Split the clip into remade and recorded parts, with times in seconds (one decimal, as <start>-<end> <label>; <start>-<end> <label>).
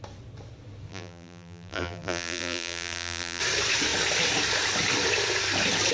0.0-0.9 recorded; 0.9-3.4 remade; 3.4-5.9 recorded